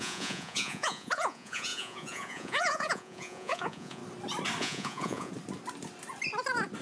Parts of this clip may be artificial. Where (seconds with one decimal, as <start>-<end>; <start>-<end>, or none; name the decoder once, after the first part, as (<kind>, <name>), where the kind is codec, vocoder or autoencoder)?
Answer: 0.0-4.0 (vocoder, Vocos); 4.6-5.3